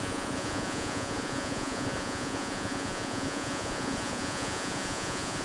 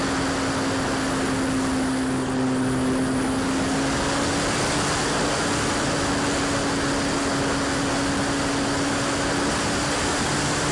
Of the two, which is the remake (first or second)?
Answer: first